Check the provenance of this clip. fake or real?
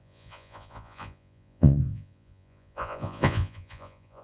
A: fake